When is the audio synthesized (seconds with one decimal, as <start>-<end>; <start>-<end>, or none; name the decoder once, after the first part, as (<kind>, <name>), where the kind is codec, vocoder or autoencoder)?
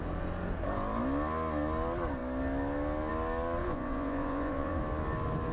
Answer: 3.6-4.8 (vocoder, Vocos)